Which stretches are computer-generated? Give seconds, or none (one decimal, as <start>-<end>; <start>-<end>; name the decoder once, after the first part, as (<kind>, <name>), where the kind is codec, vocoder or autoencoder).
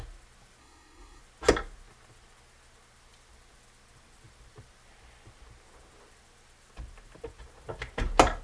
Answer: 0.6-1.2 (codec, SNAC)